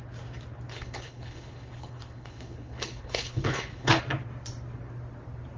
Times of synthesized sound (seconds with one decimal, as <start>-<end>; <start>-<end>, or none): 0.7-4.0